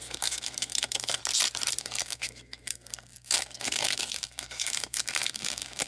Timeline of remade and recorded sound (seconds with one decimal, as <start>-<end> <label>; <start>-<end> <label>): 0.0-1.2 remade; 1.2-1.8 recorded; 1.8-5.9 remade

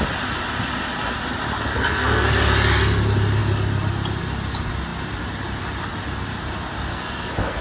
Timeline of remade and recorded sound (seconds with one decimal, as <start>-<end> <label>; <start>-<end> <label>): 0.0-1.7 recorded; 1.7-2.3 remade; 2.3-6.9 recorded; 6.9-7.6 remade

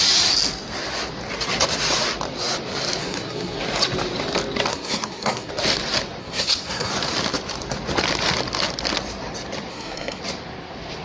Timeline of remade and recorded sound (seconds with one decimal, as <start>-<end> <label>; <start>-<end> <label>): 0.0-3.0 recorded; 3.0-3.6 remade; 3.6-4.7 recorded; 4.7-5.5 remade; 5.5-6.2 recorded; 6.2-6.9 remade; 6.9-9.7 recorded; 9.7-10.2 remade; 10.2-11.0 recorded

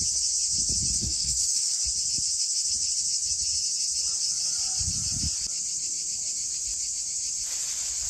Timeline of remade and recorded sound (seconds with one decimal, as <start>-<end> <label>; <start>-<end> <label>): 0.0-1.0 recorded; 1.0-1.7 remade; 1.7-8.1 recorded

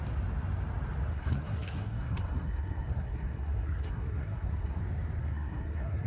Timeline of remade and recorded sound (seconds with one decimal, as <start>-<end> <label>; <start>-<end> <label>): 0.0-1.1 recorded; 1.1-4.8 remade; 4.8-5.2 recorded; 5.2-6.1 remade

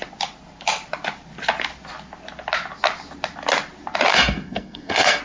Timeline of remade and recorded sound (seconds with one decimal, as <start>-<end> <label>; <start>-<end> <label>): 0.0-4.1 recorded; 4.1-5.2 remade

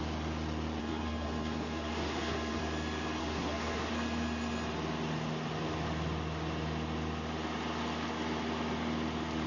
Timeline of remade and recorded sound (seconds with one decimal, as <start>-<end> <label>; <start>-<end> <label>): 0.0-0.8 recorded; 0.8-2.6 remade; 2.6-3.2 recorded; 3.2-3.9 remade; 3.9-9.5 recorded

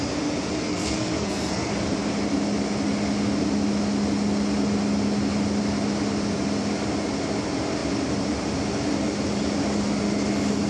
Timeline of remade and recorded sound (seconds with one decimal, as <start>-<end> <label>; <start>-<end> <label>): 0.0-0.6 recorded; 0.6-1.7 remade; 1.7-10.7 recorded